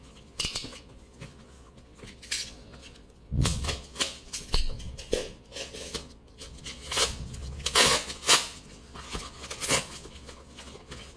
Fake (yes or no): yes